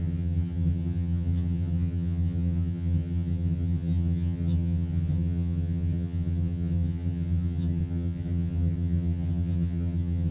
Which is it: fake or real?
fake